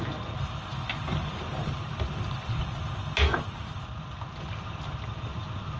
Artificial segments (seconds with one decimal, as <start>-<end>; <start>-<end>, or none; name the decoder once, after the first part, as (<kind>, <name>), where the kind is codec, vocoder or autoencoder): none